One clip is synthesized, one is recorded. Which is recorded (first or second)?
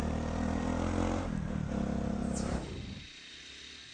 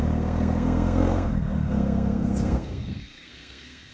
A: first